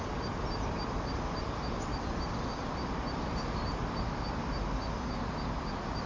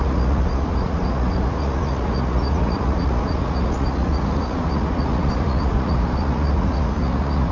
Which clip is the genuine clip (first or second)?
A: first